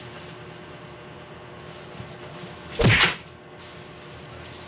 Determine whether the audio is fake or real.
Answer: real